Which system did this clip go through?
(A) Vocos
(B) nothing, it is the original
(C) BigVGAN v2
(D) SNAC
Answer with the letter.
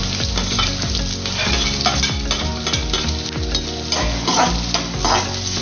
B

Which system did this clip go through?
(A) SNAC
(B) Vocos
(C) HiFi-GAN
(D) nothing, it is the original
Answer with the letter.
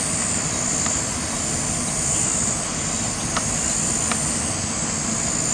D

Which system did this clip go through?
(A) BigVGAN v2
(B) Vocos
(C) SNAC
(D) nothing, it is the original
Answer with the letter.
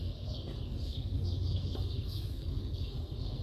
C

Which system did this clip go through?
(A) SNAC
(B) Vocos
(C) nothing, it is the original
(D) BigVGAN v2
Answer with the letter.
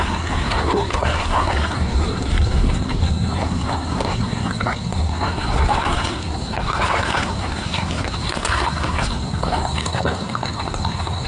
A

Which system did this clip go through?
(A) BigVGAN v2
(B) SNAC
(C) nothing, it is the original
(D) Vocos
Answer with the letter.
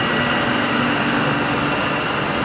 C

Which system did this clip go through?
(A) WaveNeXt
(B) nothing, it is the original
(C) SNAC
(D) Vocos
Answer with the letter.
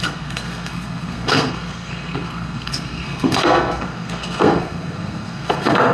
C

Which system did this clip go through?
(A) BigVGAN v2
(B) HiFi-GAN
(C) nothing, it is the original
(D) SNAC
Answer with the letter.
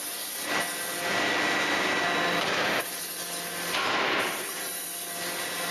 C